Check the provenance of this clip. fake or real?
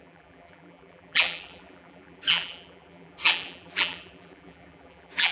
fake